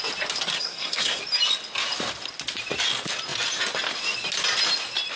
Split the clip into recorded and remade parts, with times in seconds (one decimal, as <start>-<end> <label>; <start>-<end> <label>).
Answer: 0.0-0.5 recorded; 0.5-1.2 remade; 1.2-5.2 recorded